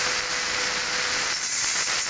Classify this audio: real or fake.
real